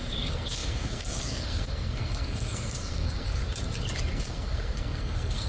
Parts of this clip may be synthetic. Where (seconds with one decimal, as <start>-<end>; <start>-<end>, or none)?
0.0-3.4; 4.1-5.5